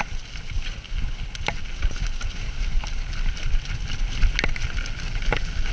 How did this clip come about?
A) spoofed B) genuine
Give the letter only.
B